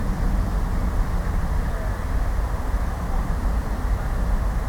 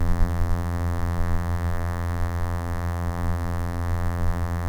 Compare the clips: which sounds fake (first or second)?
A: second